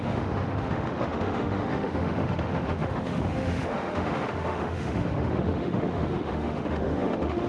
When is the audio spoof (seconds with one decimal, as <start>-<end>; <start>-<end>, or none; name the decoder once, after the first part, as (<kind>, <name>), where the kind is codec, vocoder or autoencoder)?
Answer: 0.0-7.5 (autoencoder, DAC-VAE)